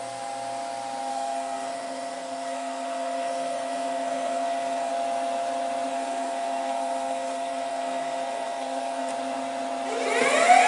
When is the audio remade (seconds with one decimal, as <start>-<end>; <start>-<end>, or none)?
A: 1.1-4.9; 5.9-9.1